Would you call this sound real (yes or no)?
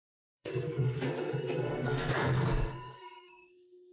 no